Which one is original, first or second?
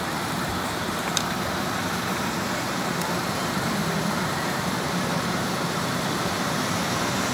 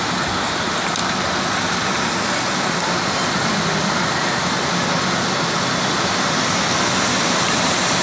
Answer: second